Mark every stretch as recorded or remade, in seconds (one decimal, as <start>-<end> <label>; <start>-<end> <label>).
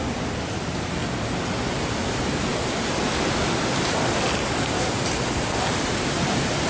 0.0-1.0 remade; 1.0-1.6 recorded; 1.6-6.7 remade